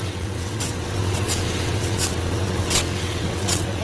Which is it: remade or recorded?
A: remade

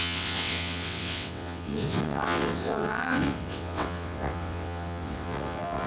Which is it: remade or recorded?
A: remade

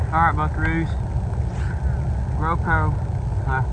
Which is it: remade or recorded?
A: recorded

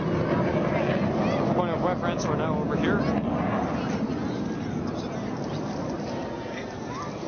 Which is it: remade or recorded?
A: recorded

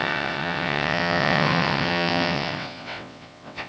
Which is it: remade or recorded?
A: remade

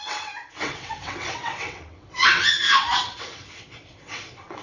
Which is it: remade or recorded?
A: remade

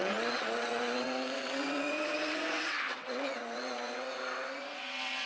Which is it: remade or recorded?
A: remade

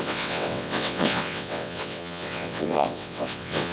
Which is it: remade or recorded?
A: remade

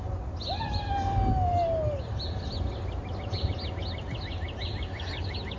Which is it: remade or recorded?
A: recorded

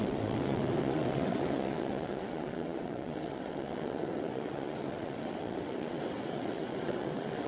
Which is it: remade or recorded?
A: remade